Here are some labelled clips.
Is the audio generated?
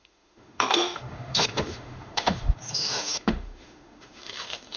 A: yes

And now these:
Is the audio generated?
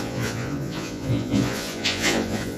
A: yes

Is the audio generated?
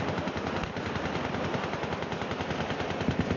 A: no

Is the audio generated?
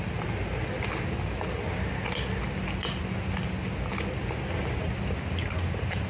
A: no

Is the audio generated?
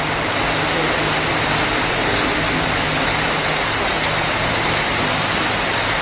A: no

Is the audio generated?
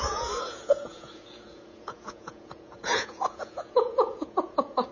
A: yes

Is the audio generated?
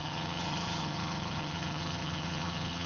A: yes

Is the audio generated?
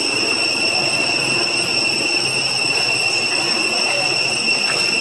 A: no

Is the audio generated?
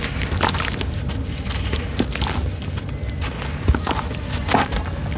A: no